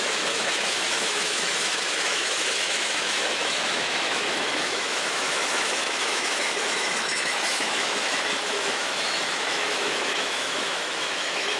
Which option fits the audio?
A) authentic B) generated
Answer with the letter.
B